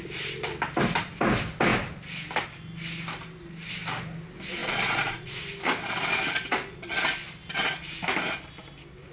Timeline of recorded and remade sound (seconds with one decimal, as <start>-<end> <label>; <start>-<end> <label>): 0.0-4.6 recorded; 4.6-5.4 remade; 5.4-9.1 recorded